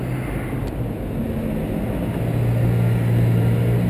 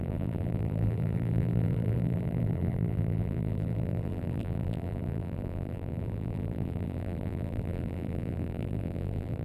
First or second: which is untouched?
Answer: first